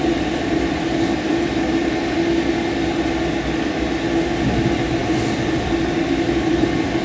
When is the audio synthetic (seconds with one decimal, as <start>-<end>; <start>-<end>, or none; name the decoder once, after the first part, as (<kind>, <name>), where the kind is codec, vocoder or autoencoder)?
none